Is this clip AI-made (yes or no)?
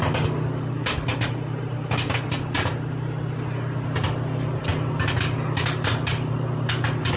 no